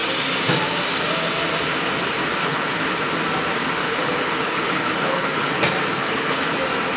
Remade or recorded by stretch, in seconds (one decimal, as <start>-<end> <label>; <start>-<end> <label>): 0.0-2.4 recorded; 2.4-3.0 remade; 3.0-3.8 recorded; 3.8-5.5 remade; 5.5-6.0 recorded; 6.0-6.6 remade; 6.6-7.0 recorded